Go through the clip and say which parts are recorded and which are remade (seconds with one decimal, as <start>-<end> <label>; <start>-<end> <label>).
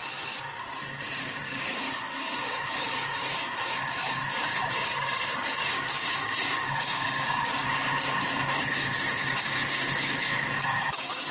0.0-1.2 recorded; 1.2-4.2 remade; 4.2-4.7 recorded; 4.7-11.3 remade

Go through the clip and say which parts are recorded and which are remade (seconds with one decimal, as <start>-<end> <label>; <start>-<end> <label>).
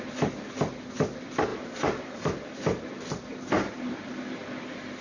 0.0-1.5 recorded; 1.5-4.0 remade; 4.0-5.0 recorded